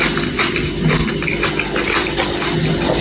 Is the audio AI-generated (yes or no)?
no